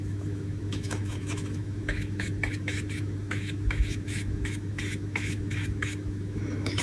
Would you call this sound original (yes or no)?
no